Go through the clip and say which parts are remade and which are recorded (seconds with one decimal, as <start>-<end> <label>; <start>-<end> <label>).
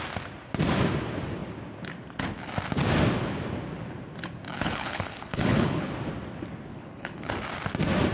0.0-4.5 recorded; 4.5-5.9 remade; 5.9-6.7 recorded; 6.7-7.3 remade; 7.3-8.1 recorded